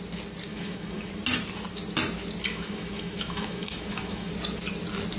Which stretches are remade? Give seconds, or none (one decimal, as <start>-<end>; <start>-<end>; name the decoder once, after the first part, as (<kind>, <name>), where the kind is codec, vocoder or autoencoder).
0.5-1.1 (autoencoder, DAC-VAE); 2.5-4.3